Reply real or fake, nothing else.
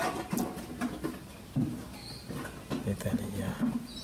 real